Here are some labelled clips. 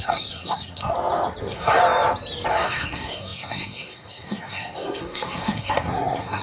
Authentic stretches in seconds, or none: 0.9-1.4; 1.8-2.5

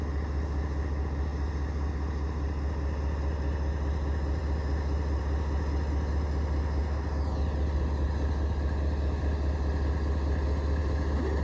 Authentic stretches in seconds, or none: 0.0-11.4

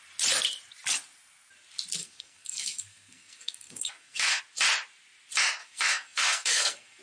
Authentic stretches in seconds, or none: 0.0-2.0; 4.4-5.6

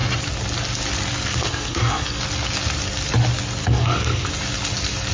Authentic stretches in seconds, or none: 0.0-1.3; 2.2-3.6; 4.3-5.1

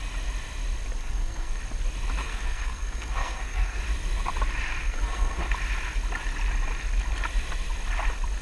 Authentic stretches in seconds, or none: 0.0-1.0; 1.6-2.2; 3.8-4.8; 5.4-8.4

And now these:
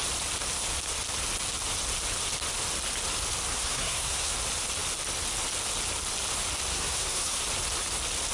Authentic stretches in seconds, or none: 0.0-3.5; 4.3-6.7; 7.4-8.3

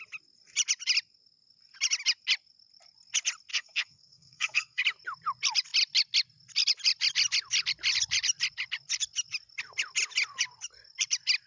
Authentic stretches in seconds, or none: 0.0-3.5; 4.8-11.5